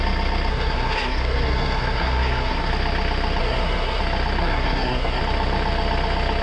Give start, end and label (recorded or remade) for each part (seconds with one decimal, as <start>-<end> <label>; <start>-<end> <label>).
0.0-0.5 recorded; 0.5-2.7 remade; 2.7-3.4 recorded; 3.4-4.0 remade; 4.0-4.4 recorded; 4.4-5.2 remade; 5.2-6.4 recorded